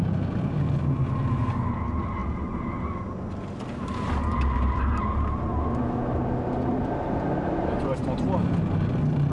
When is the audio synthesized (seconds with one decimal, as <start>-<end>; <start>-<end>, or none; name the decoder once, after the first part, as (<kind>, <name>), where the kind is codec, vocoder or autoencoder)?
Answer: 8.0-8.6 (vocoder, BigVGAN v2)